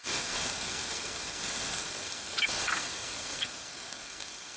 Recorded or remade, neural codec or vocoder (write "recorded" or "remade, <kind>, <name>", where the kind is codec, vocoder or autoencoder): remade, codec, SNAC